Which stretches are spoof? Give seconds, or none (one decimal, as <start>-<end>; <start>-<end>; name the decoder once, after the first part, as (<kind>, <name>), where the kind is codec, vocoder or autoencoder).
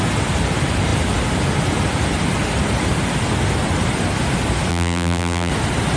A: 4.7-5.5 (vocoder, BigVGAN v2)